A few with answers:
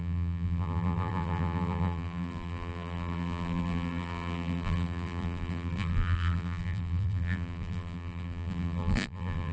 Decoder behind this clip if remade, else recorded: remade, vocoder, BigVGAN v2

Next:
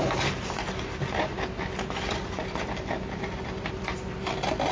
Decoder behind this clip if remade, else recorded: recorded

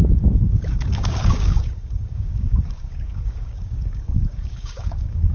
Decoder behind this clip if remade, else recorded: remade, codec, DAC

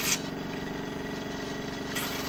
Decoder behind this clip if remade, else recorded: recorded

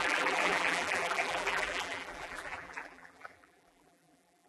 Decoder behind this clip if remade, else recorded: remade, vocoder, BigVGAN v2